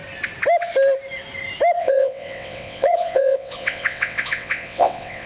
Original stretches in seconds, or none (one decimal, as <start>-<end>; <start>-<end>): 0.0-1.8